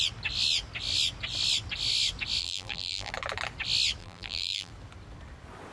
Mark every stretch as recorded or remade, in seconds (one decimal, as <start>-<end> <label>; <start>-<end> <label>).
0.0-2.4 recorded; 2.4-3.1 remade; 3.1-4.0 recorded; 4.0-4.7 remade; 4.7-5.7 recorded